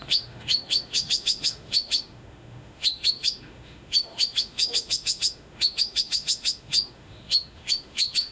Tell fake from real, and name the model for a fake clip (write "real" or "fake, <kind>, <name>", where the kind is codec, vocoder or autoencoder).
fake, autoencoder, DAC-VAE